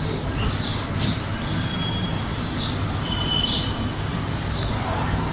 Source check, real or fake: real